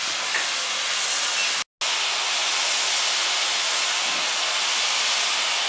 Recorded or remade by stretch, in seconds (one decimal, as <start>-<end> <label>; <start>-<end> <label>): 0.0-5.7 recorded